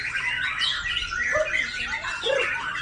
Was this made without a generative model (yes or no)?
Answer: yes